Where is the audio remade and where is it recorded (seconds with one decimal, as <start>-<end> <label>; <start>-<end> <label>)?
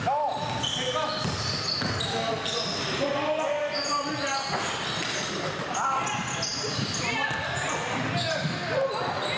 0.0-9.4 recorded